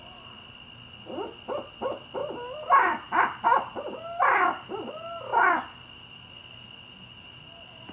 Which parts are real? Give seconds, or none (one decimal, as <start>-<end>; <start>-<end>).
0.0-7.9